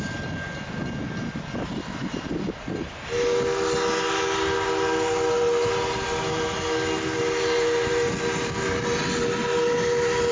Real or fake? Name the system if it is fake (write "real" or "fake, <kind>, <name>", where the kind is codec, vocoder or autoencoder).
real